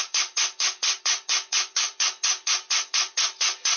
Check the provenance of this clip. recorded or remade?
remade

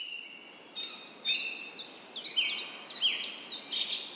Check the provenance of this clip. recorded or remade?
recorded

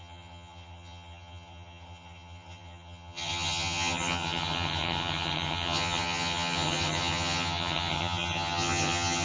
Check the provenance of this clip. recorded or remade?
remade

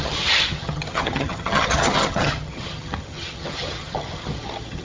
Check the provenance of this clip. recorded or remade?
remade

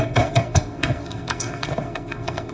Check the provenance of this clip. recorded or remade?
remade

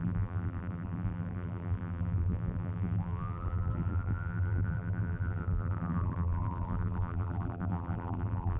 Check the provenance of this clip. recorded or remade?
remade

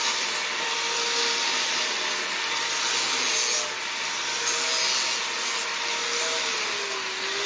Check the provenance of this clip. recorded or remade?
recorded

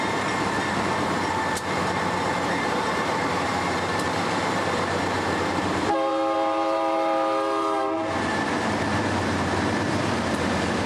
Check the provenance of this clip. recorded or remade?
remade